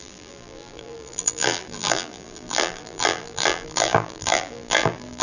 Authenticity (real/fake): fake